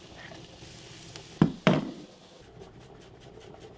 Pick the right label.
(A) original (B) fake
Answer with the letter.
B